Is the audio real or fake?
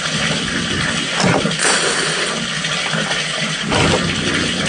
real